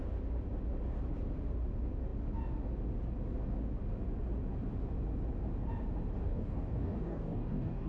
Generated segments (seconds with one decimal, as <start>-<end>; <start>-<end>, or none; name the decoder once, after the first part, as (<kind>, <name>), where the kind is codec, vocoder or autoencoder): 6.2-7.9 (codec, DAC)